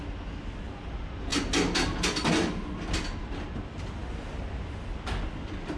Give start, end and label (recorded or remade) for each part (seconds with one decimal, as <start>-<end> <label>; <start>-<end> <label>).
0.0-5.8 recorded